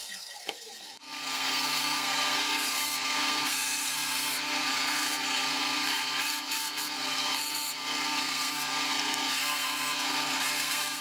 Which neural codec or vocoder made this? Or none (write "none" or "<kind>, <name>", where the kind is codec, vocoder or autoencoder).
codec, SNAC